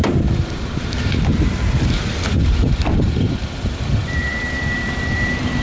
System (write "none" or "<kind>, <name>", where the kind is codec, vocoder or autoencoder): vocoder, BigVGAN v2